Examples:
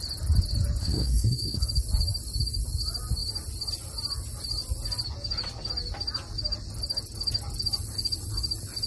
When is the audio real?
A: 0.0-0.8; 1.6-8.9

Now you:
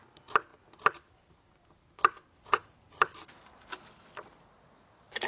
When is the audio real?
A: 0.0-5.3

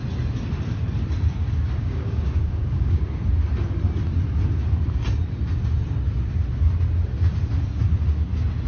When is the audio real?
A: 0.0-1.8; 3.0-8.7

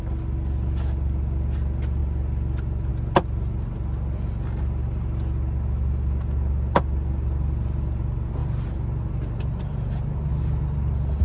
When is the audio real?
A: 0.0-11.2